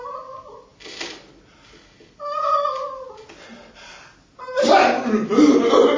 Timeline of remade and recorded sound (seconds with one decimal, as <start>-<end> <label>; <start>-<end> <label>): 0.0-6.0 recorded